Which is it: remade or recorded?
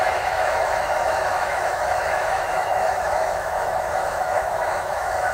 remade